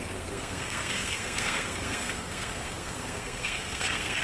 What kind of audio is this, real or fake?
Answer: fake